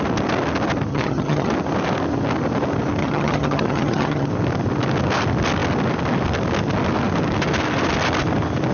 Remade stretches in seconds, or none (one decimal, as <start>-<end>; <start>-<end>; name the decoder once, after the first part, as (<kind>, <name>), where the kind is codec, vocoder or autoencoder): 0.9-1.5 (vocoder, HiFi-GAN); 3.0-4.3